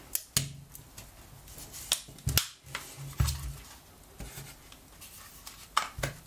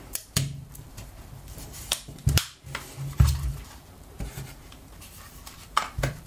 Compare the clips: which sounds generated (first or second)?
second